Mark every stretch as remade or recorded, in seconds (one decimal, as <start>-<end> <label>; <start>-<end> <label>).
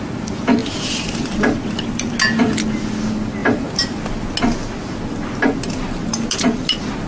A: 0.0-0.6 recorded; 0.6-1.2 remade; 1.2-3.4 recorded; 3.4-4.0 remade; 4.0-7.1 recorded